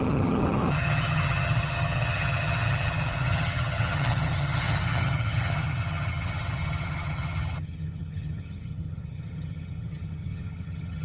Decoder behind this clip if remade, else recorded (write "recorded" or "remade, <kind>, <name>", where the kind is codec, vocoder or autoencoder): remade, vocoder, HiFi-GAN